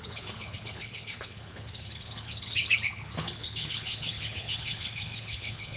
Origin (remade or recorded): remade